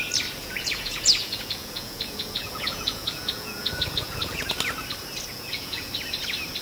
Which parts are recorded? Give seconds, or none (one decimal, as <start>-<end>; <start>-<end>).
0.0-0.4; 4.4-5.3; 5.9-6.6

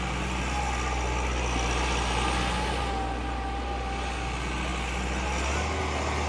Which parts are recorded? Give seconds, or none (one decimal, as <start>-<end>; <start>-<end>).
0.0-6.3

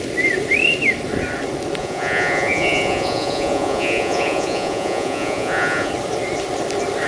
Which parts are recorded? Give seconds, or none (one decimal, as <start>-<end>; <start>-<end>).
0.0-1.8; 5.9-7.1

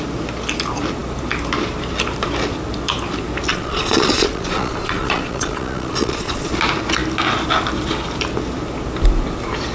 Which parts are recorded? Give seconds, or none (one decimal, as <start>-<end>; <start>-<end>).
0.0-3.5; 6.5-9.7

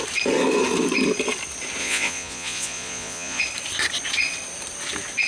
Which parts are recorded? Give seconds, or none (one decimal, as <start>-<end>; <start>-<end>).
0.0-1.8; 3.4-5.3

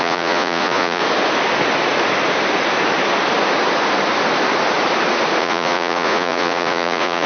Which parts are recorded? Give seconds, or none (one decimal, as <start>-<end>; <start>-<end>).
1.0-5.4

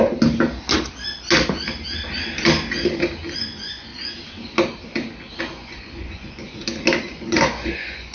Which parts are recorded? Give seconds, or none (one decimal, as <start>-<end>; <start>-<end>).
0.0-3.4; 3.9-5.4; 6.6-7.1

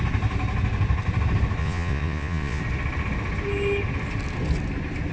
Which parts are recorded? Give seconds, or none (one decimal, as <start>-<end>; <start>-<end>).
0.0-1.6; 2.6-5.1